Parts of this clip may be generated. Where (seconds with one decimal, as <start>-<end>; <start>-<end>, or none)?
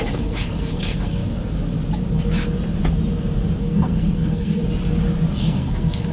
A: 0.0-1.2; 3.6-4.6; 5.4-6.1